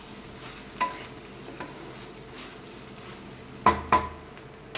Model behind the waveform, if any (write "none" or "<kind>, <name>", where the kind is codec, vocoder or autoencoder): none